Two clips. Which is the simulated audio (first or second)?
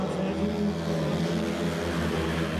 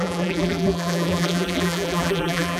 second